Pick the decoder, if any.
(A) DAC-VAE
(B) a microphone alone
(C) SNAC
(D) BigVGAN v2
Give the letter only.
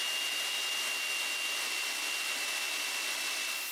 B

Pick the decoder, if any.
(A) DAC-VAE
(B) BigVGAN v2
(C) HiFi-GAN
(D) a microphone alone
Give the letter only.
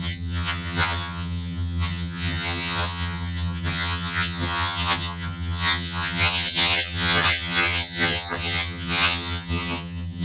C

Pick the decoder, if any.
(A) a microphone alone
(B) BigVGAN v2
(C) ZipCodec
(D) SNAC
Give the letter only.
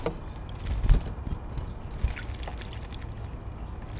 A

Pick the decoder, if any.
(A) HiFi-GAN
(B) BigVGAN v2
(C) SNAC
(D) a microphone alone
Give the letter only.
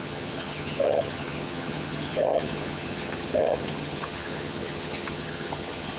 A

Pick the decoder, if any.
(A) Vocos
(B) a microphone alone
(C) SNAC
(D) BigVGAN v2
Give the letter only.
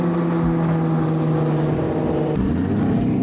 B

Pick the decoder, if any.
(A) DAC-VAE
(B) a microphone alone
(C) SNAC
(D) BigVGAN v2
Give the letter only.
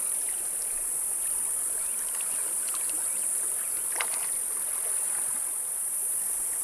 B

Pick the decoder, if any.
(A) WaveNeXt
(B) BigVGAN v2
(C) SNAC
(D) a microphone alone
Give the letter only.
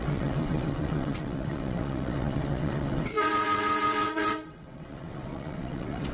A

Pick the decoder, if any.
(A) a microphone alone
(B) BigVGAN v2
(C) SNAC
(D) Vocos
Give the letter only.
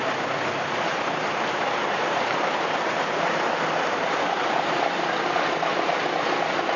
A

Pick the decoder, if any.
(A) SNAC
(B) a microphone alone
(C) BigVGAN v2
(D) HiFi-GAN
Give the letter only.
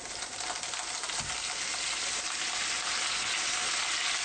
B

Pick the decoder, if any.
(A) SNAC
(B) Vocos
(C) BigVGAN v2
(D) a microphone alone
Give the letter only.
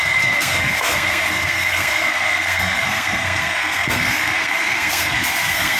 A